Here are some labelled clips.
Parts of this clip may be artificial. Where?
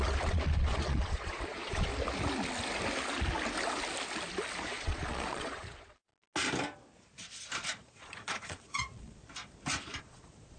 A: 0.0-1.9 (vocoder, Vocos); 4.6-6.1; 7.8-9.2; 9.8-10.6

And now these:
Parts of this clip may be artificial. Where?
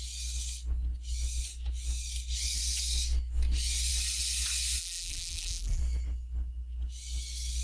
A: 4.8-5.8 (vocoder, BigVGAN v2)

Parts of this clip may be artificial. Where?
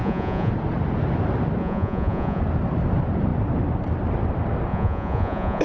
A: 0.0-0.5 (vocoder, Vocos); 1.6-2.4; 4.7-5.6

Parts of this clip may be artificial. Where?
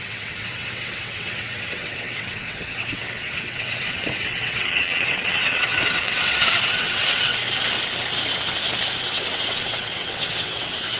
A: 0.0-7.3 (vocoder, WaveNeXt); 9.0-11.0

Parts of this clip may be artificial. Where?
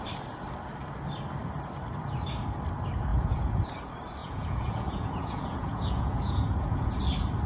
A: 3.1-3.6 (vocoder, Vocos); 4.2-7.0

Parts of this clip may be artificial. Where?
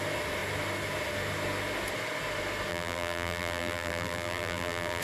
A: 2.7-5.0 (vocoder, BigVGAN v2)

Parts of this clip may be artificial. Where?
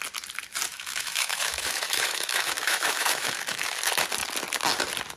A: 0.7-3.8 (autoencoder, DAC-VAE)